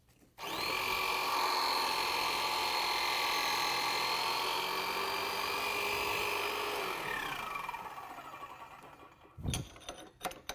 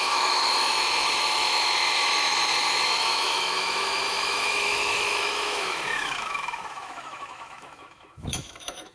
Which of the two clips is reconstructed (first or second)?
second